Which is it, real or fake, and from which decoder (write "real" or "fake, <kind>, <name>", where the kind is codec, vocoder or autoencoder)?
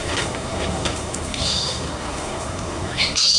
fake, codec, SNAC